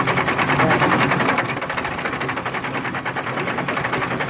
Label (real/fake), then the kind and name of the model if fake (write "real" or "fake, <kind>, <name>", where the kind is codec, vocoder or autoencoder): real